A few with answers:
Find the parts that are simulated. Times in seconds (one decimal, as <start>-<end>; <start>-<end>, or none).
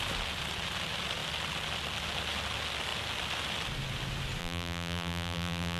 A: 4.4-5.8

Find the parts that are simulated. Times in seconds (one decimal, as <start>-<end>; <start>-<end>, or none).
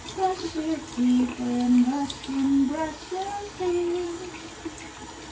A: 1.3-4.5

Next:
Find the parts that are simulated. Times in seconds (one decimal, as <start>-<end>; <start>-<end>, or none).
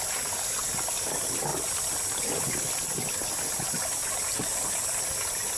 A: none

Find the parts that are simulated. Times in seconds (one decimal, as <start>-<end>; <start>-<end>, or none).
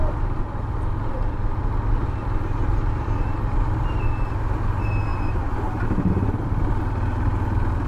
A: 0.0-1.6; 2.0-4.1; 5.1-6.1